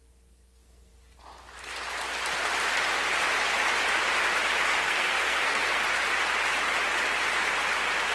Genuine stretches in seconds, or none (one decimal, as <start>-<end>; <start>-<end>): 0.9-4.8; 5.8-8.1